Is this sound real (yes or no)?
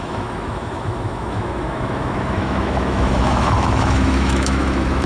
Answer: no